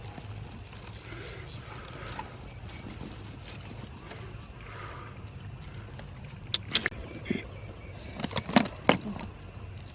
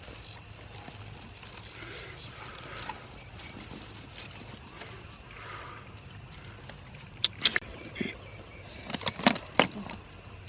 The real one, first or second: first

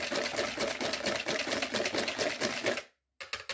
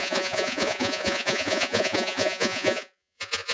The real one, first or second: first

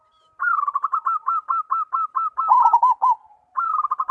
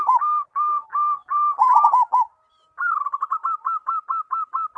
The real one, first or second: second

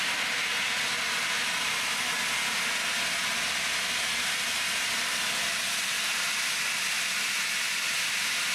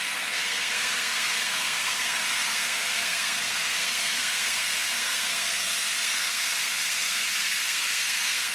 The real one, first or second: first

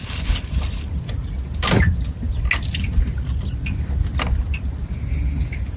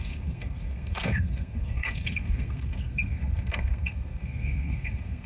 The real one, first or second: first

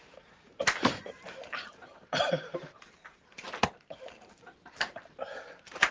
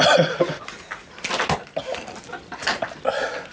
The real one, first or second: second